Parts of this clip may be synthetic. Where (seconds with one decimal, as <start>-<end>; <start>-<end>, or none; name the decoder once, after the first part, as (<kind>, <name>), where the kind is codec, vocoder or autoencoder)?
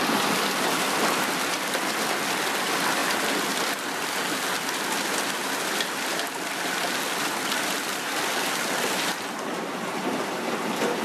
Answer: none